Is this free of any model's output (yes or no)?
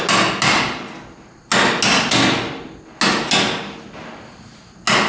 yes